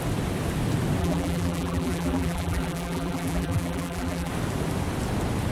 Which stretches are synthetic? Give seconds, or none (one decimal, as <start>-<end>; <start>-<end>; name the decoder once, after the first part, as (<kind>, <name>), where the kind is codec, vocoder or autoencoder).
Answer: 1.0-4.3 (vocoder, BigVGAN v2)